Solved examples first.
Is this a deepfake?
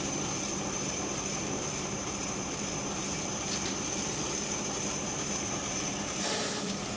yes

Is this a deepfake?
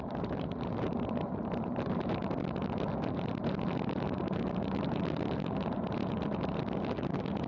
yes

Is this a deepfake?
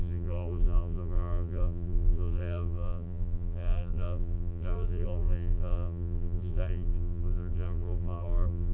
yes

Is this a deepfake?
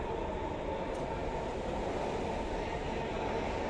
no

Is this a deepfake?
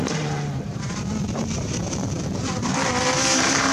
yes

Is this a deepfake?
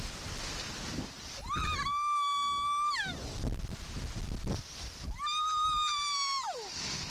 no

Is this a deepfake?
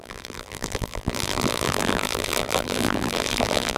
yes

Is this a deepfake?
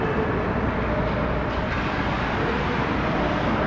yes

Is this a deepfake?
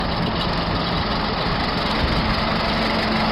no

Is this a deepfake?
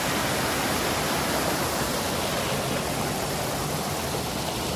no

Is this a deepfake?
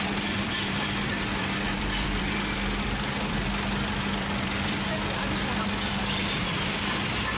yes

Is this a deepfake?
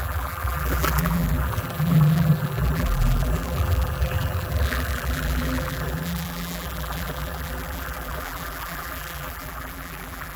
yes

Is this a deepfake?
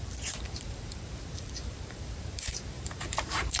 yes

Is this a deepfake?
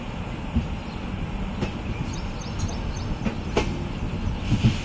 no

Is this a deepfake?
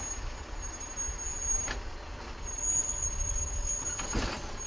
no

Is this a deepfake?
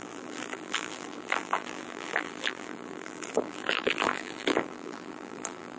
yes